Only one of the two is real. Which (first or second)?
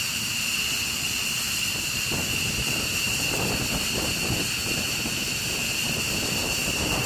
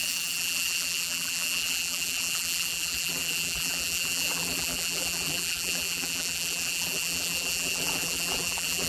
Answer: first